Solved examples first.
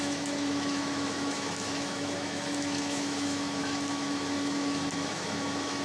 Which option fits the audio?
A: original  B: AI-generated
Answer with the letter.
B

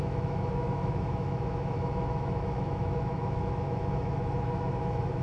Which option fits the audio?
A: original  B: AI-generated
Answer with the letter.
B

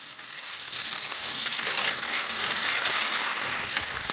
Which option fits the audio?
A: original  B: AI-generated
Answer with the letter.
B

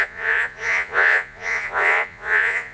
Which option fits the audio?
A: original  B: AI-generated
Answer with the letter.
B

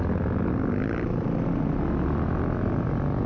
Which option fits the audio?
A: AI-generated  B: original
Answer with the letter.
B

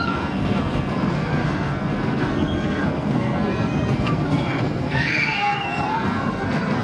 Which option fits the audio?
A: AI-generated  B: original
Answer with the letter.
A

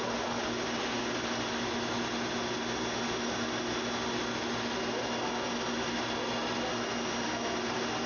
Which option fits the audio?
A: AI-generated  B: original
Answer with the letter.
B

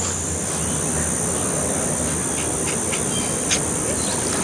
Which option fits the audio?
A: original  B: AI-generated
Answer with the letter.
A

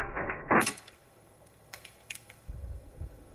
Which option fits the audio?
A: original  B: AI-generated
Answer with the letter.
B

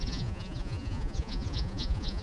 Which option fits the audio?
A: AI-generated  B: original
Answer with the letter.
A